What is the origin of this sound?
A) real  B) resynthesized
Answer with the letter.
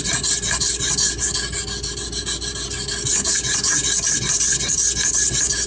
A